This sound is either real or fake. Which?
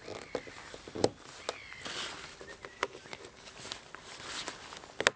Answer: real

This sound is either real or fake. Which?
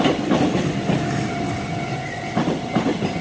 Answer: real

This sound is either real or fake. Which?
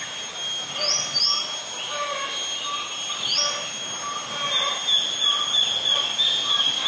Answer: real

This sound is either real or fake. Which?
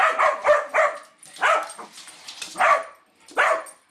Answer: real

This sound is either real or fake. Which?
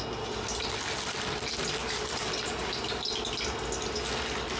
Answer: real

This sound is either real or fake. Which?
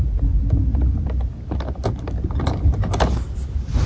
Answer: real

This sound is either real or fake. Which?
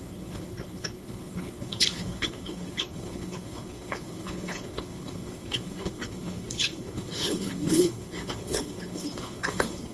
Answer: fake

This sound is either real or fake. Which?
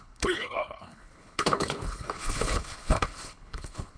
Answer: fake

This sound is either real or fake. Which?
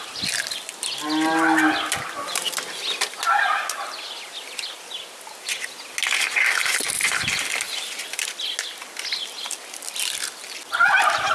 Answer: real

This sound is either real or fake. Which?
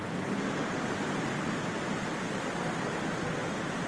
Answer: real